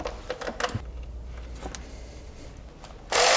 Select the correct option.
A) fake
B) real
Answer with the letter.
B